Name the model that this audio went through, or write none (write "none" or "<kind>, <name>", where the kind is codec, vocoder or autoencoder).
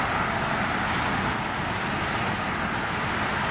none